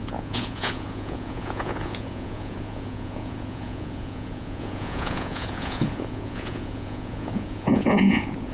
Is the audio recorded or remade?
remade